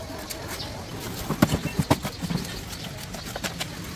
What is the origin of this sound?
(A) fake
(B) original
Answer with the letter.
B